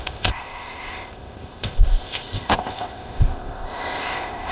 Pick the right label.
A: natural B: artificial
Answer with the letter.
B